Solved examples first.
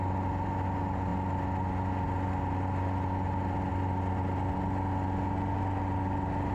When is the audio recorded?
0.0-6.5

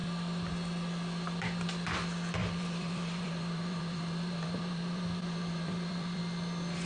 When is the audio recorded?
0.0-2.4; 6.2-6.9

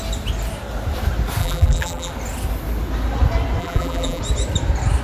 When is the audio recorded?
0.0-1.4; 2.1-3.6; 4.2-5.0

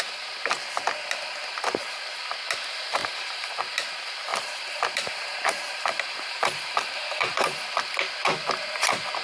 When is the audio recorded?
0.0-3.0; 3.6-4.3; 7.7-9.2